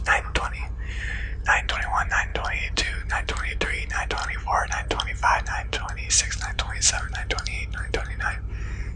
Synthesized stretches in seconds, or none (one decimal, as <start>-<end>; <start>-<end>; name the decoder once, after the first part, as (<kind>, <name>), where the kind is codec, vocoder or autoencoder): 2.3-3.1 (vocoder, BigVGAN v2); 4.2-8.0